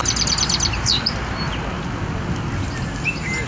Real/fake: real